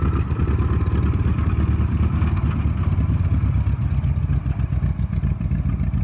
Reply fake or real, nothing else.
real